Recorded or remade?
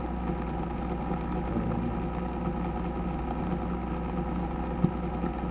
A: recorded